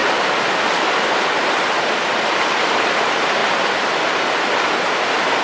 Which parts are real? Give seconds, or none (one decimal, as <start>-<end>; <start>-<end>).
0.0-2.1; 3.4-5.4